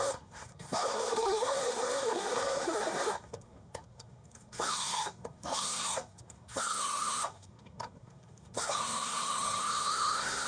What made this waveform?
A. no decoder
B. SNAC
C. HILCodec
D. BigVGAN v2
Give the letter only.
B